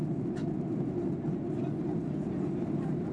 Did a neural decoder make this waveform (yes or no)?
no